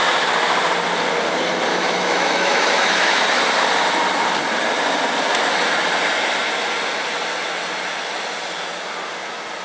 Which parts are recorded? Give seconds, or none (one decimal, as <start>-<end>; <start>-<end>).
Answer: 0.0-1.7; 3.2-9.6